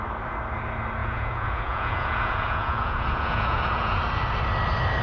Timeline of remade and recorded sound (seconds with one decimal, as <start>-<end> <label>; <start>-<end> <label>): 0.0-1.0 recorded; 1.0-4.0 remade; 4.0-5.0 recorded